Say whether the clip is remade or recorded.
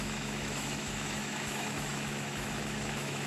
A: remade